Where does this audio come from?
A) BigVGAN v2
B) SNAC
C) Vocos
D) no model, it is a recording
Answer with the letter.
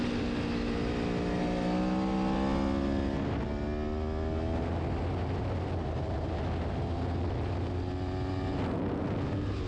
D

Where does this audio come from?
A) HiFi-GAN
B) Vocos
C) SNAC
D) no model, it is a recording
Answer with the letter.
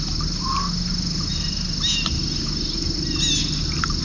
D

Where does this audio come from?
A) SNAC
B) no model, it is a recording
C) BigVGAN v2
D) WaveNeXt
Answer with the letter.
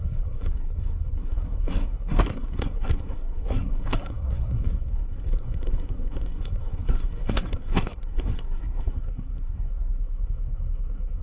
A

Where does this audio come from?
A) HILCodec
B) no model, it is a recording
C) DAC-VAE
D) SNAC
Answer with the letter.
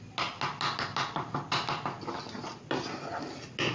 B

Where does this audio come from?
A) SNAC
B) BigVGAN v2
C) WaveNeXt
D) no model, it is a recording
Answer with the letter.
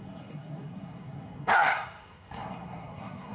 A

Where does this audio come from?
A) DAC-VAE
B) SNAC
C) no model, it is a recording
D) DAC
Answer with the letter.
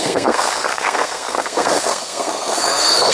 B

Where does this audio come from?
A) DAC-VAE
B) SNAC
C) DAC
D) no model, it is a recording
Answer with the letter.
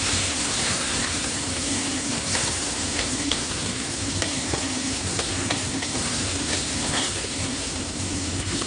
B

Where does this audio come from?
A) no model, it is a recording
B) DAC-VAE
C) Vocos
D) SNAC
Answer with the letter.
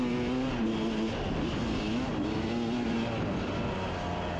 A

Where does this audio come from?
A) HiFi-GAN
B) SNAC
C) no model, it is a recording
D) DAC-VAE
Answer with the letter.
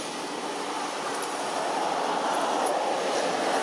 C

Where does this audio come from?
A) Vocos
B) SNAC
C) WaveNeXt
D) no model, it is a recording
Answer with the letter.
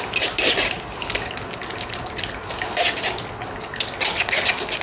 D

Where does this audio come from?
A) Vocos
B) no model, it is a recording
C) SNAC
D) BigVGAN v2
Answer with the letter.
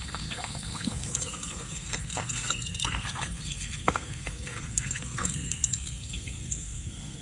C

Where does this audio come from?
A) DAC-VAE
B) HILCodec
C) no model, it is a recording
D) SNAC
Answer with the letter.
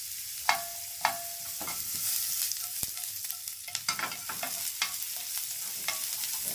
C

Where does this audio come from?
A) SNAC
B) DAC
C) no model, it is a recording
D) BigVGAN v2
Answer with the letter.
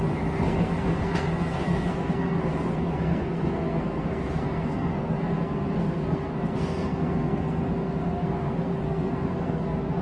A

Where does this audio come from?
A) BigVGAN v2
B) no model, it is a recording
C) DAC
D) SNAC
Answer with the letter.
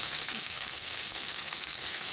D